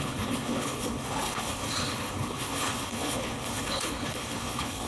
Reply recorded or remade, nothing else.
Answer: remade